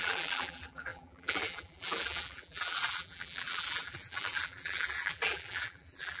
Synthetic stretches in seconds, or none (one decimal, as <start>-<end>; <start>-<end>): 0.0-6.2